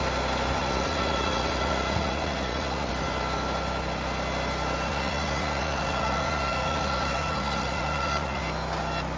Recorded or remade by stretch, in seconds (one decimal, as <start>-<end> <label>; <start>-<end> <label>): 0.0-0.6 recorded; 0.6-2.9 remade; 2.9-4.9 recorded; 4.9-8.4 remade; 8.4-9.2 recorded